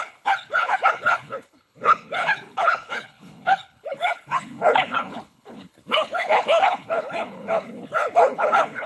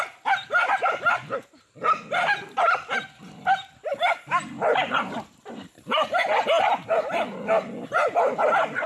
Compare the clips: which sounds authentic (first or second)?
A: second